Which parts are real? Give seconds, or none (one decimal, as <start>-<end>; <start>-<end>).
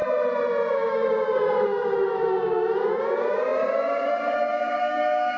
0.0-0.7